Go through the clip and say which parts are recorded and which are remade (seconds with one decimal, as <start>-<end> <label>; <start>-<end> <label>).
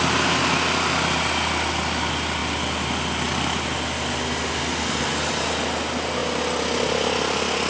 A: 0.0-7.7 recorded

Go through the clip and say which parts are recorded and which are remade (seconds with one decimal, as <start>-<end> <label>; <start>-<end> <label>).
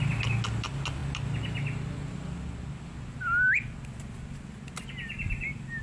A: 0.0-5.8 recorded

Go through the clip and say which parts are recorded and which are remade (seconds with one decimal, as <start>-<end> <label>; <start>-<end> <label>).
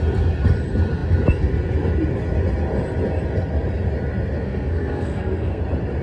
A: 0.0-4.4 recorded; 4.4-5.6 remade; 5.6-6.0 recorded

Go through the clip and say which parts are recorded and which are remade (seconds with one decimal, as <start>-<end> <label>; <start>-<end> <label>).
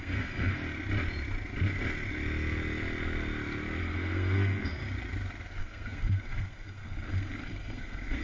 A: 0.0-0.6 remade; 0.6-3.8 recorded; 3.8-4.8 remade; 4.8-5.6 recorded; 5.6-8.2 remade